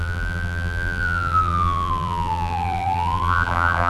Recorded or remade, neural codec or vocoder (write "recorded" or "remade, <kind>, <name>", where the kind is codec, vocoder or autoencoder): remade, vocoder, BigVGAN v2